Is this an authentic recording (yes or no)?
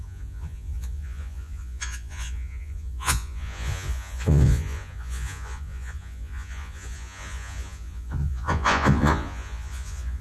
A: no